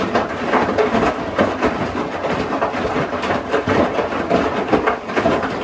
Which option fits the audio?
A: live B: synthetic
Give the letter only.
B